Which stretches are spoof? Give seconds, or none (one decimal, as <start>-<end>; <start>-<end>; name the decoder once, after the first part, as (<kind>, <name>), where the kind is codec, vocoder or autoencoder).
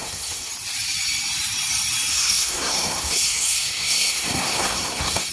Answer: 0.0-0.5 (codec, SNAC); 2.1-5.3